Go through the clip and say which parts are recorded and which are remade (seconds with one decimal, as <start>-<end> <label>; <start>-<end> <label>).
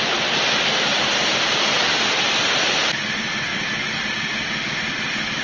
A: 0.0-0.9 recorded; 0.9-3.1 remade; 3.1-3.5 recorded; 3.5-4.1 remade; 4.1-5.4 recorded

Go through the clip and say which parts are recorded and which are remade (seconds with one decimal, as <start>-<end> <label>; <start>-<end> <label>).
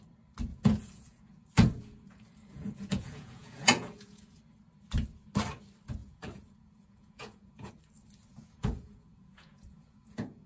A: 0.0-0.5 recorded; 0.5-4.4 remade; 4.4-6.0 recorded; 6.0-7.7 remade; 7.7-8.3 recorded; 8.3-10.5 remade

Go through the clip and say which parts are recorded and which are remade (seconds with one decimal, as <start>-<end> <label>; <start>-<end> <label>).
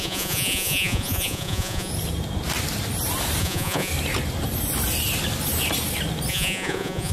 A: 0.0-1.9 remade; 1.9-3.4 recorded; 3.4-3.9 remade; 3.9-6.3 recorded; 6.3-7.1 remade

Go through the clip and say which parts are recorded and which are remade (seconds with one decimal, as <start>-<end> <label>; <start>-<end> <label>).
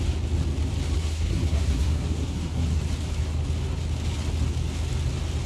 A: 0.0-1.0 recorded; 1.0-2.8 remade; 2.8-5.5 recorded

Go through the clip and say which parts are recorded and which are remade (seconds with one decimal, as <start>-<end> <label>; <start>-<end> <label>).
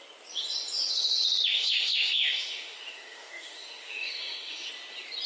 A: 0.0-1.5 recorded; 1.5-4.7 remade; 4.7-5.3 recorded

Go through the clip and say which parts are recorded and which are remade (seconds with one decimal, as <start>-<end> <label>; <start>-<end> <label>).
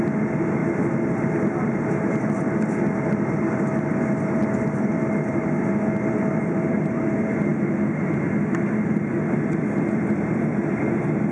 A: 0.0-11.3 recorded